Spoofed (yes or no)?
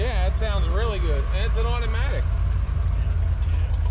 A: no